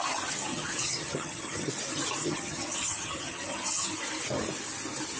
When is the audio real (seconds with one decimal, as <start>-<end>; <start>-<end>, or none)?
0.0-0.5; 1.7-2.2; 4.0-5.2